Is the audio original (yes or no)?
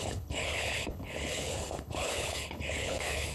no